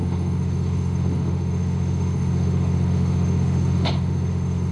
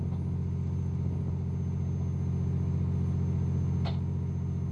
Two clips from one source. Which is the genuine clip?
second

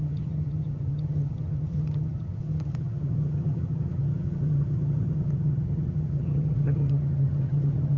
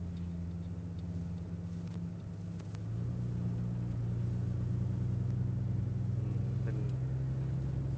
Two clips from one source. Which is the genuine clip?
second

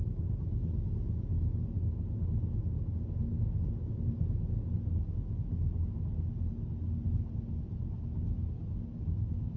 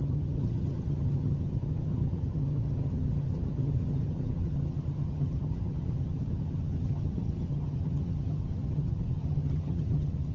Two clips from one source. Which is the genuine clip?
first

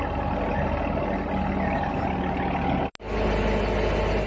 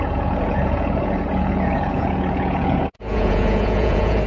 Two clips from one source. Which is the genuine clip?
first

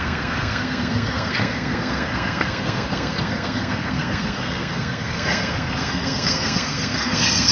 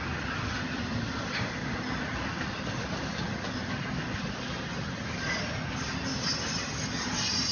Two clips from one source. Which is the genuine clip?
second